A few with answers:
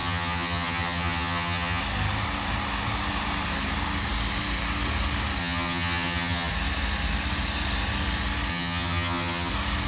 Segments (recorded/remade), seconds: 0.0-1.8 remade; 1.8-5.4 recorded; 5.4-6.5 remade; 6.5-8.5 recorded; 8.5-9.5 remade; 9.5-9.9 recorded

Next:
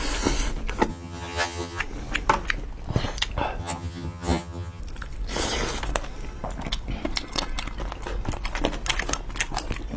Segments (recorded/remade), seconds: 0.0-0.9 recorded; 0.9-1.8 remade; 1.8-3.6 recorded; 3.6-4.8 remade; 4.8-10.0 recorded

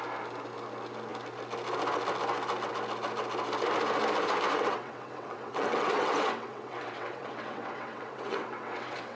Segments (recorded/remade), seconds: 0.0-4.5 recorded; 4.5-9.2 remade

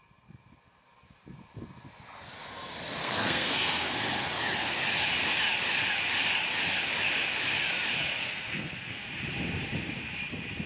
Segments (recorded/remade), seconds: 0.0-3.0 recorded; 3.0-4.0 remade; 4.0-8.2 recorded; 8.2-9.0 remade; 9.0-10.7 recorded